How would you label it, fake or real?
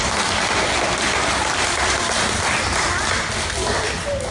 real